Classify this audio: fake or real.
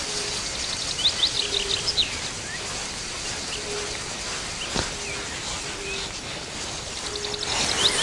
real